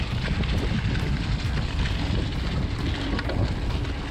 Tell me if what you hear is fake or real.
real